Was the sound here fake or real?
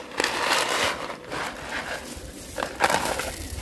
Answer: fake